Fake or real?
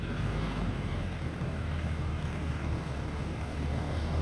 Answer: fake